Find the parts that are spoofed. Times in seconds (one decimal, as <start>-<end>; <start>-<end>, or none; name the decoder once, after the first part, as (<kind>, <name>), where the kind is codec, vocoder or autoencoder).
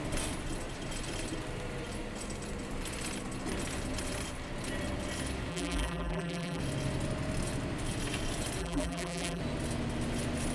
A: 5.5-6.6 (vocoder, BigVGAN v2); 8.6-9.4